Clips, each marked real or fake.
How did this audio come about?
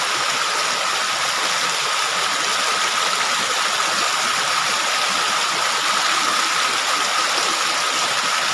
real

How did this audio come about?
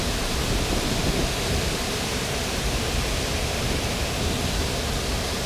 real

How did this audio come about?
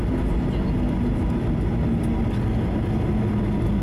real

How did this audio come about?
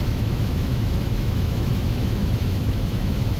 fake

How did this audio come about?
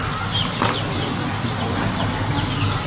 real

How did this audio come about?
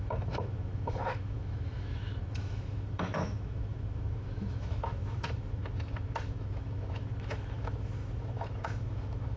fake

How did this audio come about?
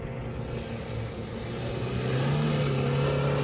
real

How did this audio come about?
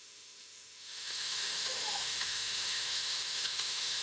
fake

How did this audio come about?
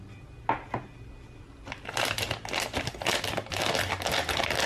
real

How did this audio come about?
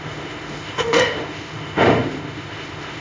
fake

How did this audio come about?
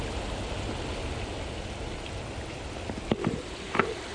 real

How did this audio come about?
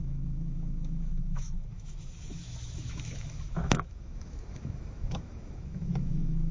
fake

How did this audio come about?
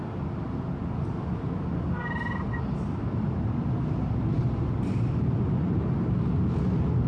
real